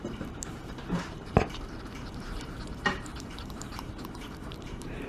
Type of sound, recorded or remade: remade